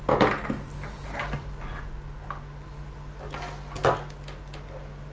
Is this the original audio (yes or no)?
yes